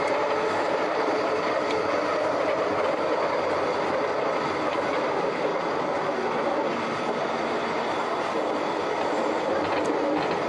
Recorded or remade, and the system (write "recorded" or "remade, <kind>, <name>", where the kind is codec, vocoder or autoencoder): recorded